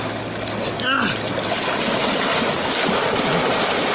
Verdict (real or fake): real